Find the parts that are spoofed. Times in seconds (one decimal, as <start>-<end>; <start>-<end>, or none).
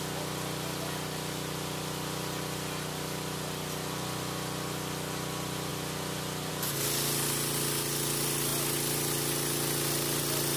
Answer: none